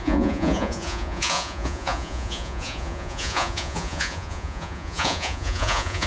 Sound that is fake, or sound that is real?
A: fake